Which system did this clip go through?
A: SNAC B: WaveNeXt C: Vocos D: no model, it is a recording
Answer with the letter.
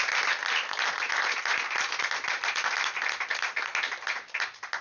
D